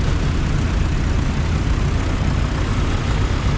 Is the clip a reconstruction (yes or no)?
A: no